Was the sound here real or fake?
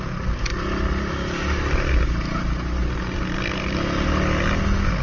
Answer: real